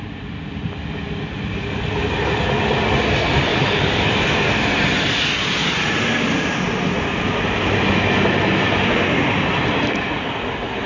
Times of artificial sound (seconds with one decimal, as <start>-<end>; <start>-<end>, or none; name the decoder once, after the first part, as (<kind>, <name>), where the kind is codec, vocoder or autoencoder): 3.5-4.1 (codec, DAC)